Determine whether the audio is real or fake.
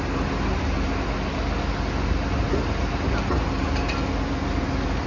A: real